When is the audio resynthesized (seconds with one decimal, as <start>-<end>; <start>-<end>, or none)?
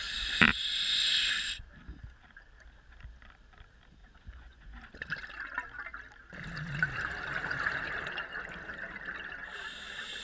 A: 4.0-4.8